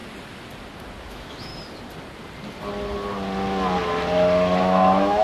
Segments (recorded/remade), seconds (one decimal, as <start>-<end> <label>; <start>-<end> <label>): 0.0-1.0 recorded; 1.0-1.5 remade; 1.5-4.6 recorded; 4.6-5.2 remade